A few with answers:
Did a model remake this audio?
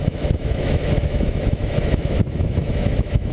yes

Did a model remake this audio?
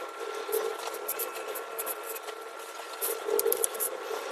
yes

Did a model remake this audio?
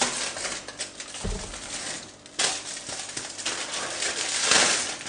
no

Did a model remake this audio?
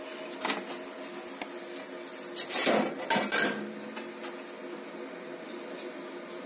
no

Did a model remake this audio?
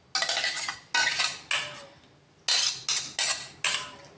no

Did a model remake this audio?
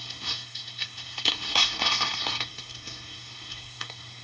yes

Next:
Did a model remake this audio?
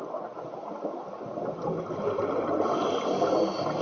no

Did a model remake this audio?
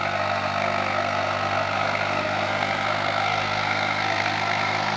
yes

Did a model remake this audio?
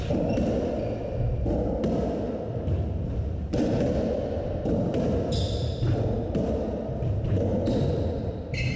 no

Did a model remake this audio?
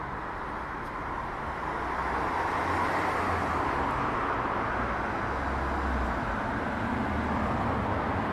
no